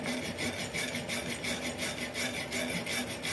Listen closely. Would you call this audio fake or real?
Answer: real